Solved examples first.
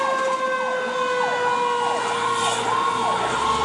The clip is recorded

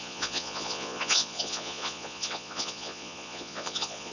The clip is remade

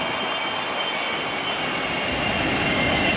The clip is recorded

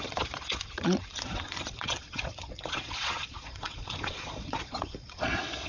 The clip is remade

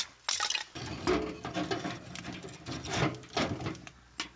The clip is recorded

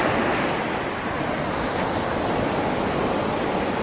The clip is recorded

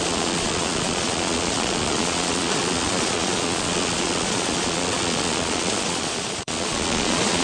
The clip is remade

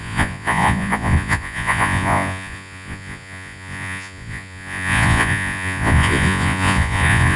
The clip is remade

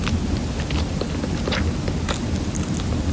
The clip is recorded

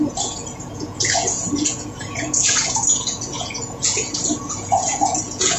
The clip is remade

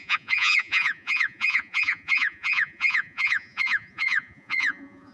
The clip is remade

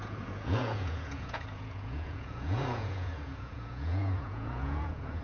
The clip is remade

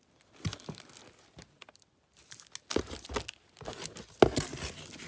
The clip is recorded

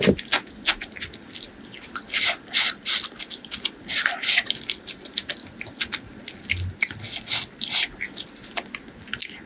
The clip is recorded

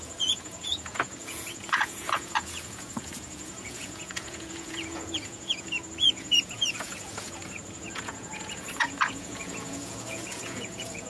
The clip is remade